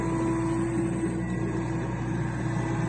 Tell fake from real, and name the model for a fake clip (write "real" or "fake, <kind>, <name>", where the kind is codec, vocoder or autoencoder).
real